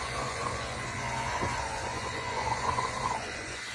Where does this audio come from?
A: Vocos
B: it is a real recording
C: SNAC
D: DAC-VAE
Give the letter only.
A